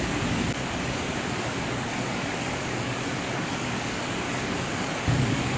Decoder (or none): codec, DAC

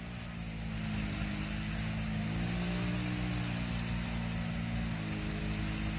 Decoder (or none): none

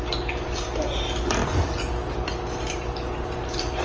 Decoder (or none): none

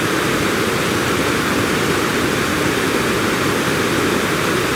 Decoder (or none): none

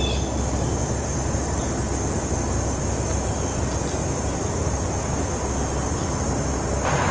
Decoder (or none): none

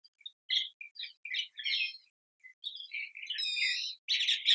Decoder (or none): none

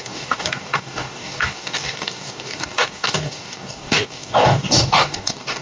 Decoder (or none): codec, DAC